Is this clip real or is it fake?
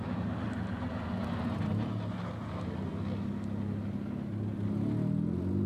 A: real